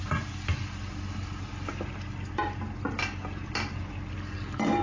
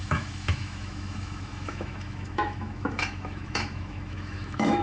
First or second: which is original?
first